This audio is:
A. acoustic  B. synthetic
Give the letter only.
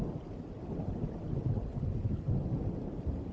A